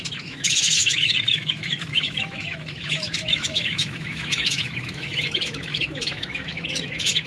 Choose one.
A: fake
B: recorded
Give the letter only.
A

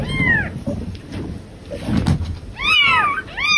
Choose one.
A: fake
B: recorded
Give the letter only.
A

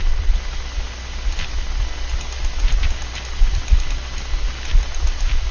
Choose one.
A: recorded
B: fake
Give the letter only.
A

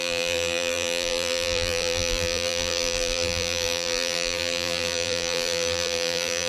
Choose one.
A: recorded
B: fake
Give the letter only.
B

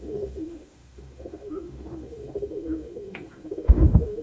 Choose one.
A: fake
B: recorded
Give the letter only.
A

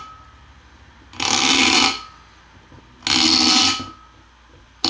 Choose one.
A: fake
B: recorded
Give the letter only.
B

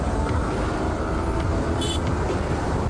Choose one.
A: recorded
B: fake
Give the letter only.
B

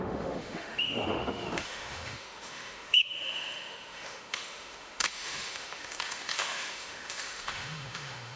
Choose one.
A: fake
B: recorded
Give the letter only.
A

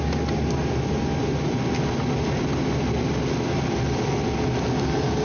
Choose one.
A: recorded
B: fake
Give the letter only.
A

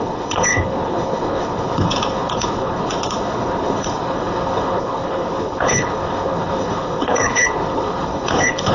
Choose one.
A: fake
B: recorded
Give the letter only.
A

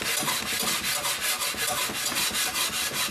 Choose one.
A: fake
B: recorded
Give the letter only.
B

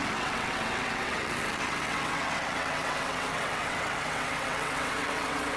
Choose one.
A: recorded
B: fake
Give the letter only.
B